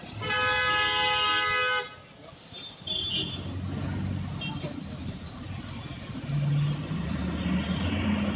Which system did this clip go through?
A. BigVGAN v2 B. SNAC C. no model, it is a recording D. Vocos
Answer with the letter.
C